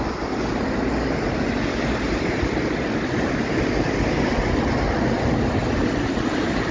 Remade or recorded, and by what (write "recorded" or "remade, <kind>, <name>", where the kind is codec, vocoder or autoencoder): recorded